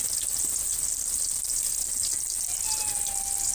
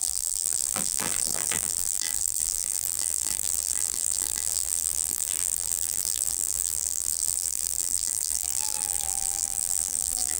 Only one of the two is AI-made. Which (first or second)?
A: second